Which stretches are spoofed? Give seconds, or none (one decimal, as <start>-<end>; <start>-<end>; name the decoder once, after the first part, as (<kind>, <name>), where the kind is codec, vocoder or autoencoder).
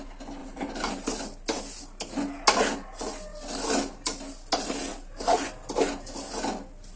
0.4-0.9 (vocoder, BigVGAN v2)